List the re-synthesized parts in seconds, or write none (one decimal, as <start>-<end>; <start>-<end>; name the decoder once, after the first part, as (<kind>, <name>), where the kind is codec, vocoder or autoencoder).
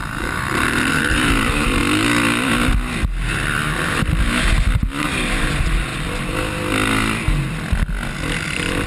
0.0-1.8 (vocoder, BigVGAN v2); 5.0-5.9